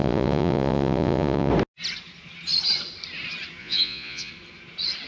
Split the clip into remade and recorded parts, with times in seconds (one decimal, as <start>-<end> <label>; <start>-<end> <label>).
0.0-1.5 remade; 1.5-3.6 recorded; 3.6-4.3 remade; 4.3-5.1 recorded

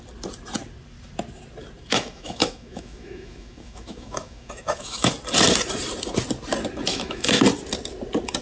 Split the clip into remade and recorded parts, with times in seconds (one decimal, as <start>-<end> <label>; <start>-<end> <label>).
0.0-1.9 recorded; 1.9-5.1 remade; 5.1-6.9 recorded; 6.9-7.4 remade; 7.4-8.4 recorded

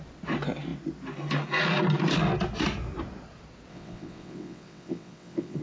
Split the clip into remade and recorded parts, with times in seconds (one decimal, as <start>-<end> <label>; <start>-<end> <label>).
0.0-3.7 recorded; 3.7-5.6 remade